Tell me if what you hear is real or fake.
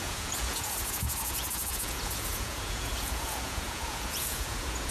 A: fake